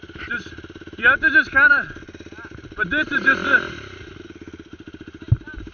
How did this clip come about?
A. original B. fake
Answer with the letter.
A